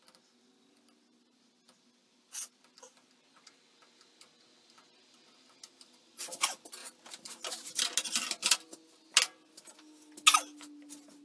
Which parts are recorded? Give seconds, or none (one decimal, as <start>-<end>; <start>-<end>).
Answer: 0.0-11.2